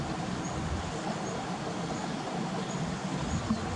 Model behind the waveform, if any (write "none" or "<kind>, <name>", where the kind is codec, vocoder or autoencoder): none